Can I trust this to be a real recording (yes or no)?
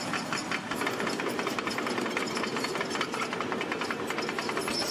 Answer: yes